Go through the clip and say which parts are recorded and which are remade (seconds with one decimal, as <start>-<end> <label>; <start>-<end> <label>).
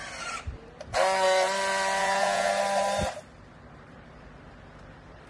0.0-2.0 recorded; 2.0-2.5 remade; 2.5-5.3 recorded